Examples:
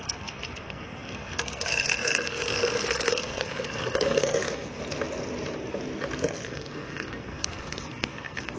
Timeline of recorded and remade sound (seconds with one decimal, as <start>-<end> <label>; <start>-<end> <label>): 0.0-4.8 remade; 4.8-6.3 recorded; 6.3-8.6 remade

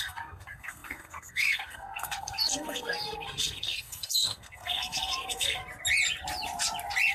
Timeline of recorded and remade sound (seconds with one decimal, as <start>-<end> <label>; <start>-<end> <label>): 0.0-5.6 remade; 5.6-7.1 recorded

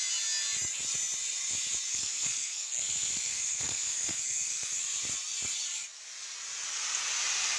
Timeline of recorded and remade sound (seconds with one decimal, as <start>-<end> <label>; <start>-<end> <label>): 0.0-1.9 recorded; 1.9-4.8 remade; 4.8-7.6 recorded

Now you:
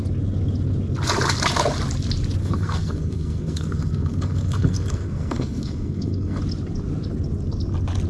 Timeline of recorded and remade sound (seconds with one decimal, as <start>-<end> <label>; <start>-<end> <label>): 0.0-2.4 recorded; 2.4-6.4 remade; 6.4-8.1 recorded

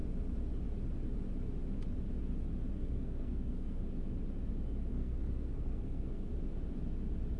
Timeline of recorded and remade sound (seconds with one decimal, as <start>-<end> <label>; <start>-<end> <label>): 0.0-2.8 recorded; 2.8-3.8 remade; 3.8-4.9 recorded; 4.9-6.3 remade; 6.3-7.4 recorded

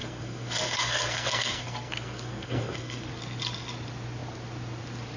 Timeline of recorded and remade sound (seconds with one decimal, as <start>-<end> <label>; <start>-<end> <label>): 0.0-3.1 remade; 3.1-5.2 recorded

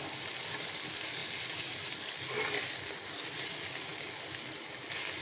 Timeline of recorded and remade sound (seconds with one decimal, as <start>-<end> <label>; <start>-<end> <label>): 0.0-5.2 recorded